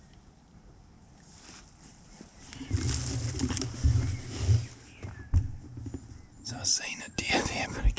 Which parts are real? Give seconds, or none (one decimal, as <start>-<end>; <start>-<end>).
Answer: 0.0-8.0